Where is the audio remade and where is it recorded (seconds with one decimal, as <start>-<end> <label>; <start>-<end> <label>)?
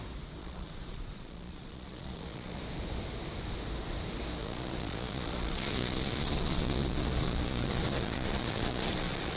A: 0.0-0.4 recorded; 0.4-2.6 remade; 2.6-4.4 recorded; 4.4-9.4 remade